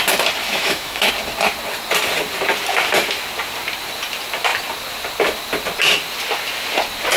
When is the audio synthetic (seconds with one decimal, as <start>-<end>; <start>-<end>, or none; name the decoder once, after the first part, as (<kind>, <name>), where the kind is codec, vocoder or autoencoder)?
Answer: 0.4-1.1 (autoencoder, DAC-VAE)